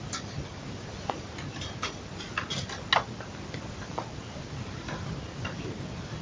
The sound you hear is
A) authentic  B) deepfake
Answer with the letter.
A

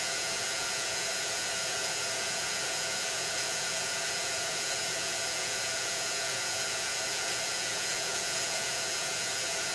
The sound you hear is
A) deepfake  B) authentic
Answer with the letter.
A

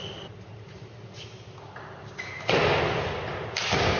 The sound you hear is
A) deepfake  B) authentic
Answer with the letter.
B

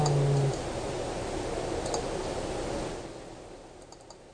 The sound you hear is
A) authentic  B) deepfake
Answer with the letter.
A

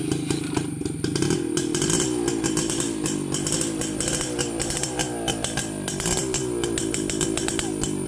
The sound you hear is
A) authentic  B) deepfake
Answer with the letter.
A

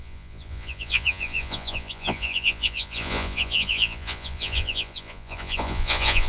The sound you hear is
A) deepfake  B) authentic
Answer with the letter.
A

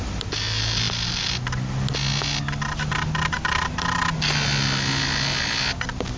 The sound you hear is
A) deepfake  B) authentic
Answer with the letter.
B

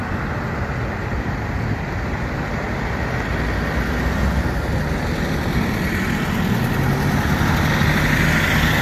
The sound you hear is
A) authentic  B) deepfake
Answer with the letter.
A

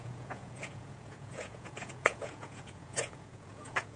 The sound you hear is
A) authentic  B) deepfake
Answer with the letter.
B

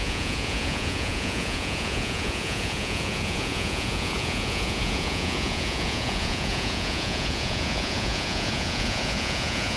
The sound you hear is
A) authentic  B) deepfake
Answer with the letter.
B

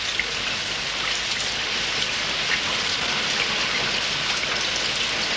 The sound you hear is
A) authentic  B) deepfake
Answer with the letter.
A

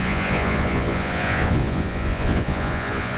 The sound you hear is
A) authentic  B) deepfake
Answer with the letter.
B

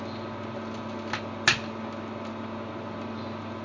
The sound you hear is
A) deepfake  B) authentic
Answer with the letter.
B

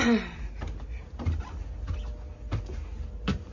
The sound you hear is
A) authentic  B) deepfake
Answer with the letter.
A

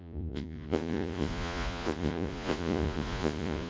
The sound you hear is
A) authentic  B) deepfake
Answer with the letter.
B